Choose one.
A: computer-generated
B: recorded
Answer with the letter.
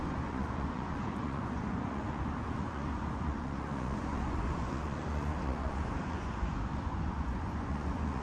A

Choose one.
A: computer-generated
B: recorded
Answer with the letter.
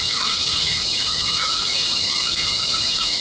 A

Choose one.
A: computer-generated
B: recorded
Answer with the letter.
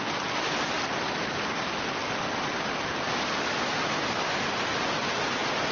B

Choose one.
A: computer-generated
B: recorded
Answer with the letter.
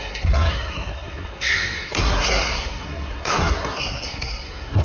A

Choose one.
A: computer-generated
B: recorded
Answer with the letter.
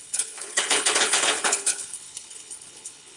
A